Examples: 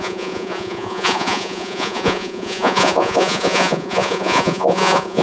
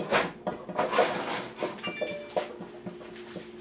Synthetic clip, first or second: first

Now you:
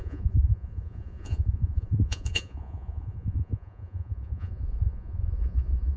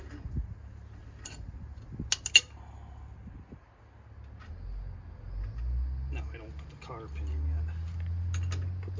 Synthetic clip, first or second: first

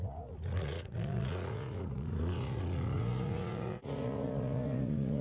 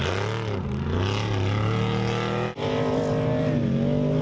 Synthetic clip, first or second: first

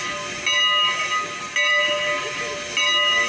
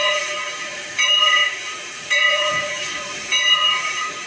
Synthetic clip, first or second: second